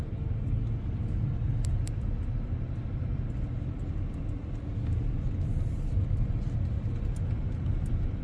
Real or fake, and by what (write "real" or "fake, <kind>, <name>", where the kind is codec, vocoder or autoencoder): real